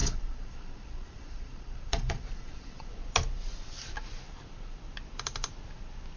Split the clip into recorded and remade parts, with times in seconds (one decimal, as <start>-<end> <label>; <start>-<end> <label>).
0.0-2.9 remade; 2.9-6.2 recorded